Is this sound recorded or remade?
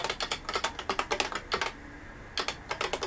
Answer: recorded